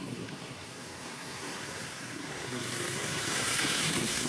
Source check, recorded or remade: remade